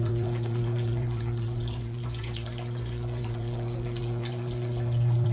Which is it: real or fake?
fake